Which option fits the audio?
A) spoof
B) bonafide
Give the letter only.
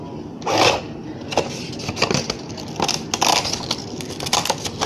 B